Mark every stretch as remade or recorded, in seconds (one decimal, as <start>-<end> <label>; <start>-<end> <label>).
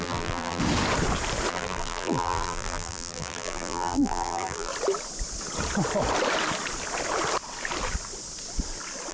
0.0-0.6 remade; 0.6-1.5 recorded; 1.5-4.7 remade; 4.7-9.1 recorded